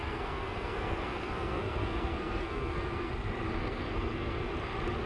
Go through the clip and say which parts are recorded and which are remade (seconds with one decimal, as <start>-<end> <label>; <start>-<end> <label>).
0.0-3.1 remade; 3.1-3.6 recorded; 3.6-4.5 remade; 4.5-5.1 recorded